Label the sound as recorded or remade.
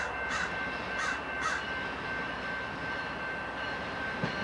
recorded